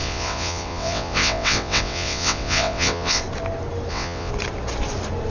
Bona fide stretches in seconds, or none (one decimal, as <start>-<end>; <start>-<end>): 3.2-3.9; 4.3-5.3